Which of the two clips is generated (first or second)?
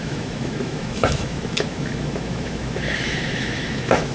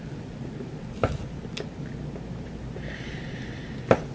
first